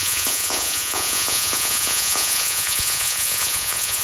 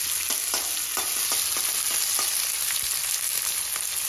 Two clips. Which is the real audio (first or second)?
second